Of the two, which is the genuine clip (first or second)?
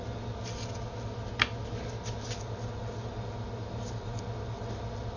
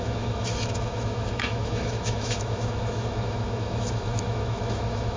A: first